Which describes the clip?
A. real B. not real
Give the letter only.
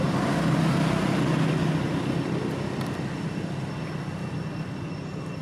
A